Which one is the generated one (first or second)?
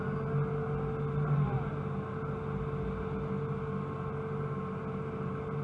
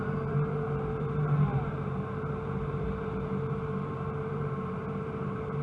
second